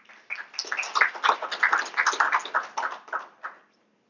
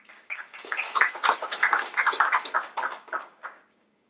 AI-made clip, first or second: second